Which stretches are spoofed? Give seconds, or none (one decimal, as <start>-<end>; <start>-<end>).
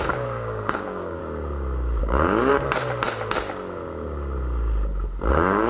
0.0-1.2; 2.0-2.5; 5.3-5.7